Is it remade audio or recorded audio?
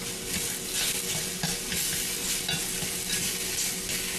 recorded